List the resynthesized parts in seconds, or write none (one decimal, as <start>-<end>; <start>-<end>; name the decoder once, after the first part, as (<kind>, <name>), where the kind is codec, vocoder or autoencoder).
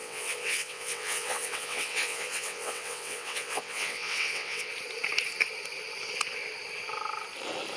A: 0.0-4.7 (vocoder, WaveNeXt)